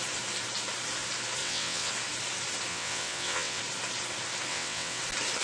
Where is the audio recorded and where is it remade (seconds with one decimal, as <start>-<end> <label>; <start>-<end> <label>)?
0.0-1.4 recorded; 1.4-1.9 remade; 1.9-2.7 recorded; 2.7-3.6 remade; 3.6-4.5 recorded; 4.5-5.0 remade; 5.0-5.4 recorded